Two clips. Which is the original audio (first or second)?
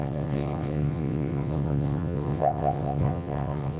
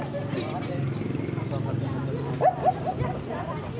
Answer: second